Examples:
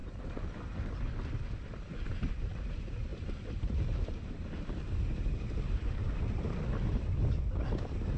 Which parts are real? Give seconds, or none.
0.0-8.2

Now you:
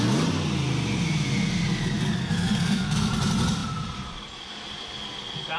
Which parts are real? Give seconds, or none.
0.0-2.2; 3.1-5.6

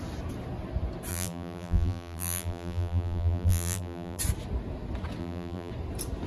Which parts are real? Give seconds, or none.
0.0-1.1; 4.2-5.2; 5.7-6.3

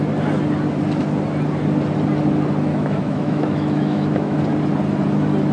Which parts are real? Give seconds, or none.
0.0-2.7; 4.4-5.5

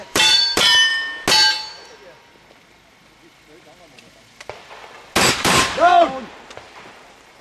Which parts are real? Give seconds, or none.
0.9-5.3; 5.9-6.6

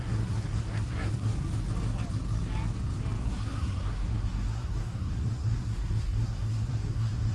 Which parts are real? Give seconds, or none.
1.5-3.2

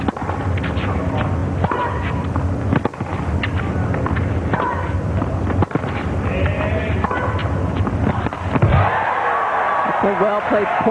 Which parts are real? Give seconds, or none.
0.0-10.9

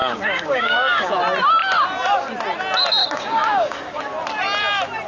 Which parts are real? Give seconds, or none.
1.1-3.0; 4.0-5.1